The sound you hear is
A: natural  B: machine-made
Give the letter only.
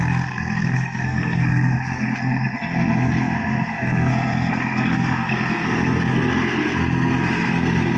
B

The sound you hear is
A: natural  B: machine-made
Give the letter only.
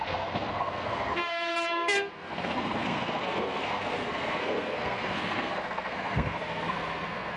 B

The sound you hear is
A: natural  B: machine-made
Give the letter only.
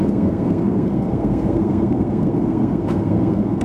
B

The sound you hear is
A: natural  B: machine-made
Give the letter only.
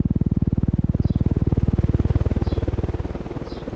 A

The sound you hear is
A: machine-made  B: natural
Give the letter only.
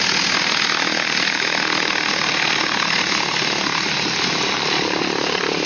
B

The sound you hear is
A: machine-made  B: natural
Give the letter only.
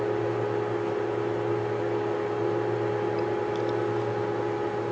B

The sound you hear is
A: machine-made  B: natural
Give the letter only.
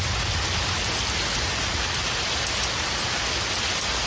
B